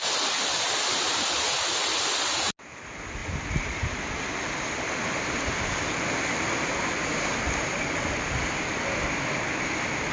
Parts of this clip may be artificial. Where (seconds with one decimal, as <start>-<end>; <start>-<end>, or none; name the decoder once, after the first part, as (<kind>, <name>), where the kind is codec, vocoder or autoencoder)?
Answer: 3.2-7.4 (vocoder, BigVGAN v2)